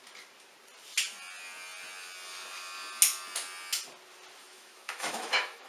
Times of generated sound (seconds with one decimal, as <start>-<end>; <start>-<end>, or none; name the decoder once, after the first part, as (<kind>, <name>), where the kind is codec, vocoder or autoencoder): 4.4-5.7 (autoencoder, DAC-VAE)